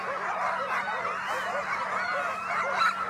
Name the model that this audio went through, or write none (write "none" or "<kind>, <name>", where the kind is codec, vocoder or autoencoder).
none